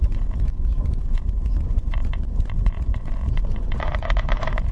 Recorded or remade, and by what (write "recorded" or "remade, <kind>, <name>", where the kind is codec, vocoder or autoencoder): remade, vocoder, Vocos